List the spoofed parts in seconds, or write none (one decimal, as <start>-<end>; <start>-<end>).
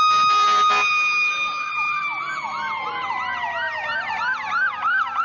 none